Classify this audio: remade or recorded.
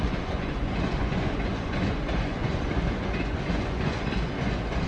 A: remade